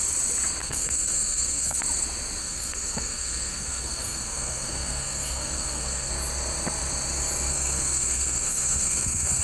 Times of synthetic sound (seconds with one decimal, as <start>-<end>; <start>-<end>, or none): 0.6-1.8; 2.4-6.1; 7.5-9.4